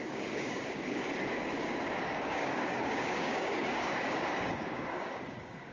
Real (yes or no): no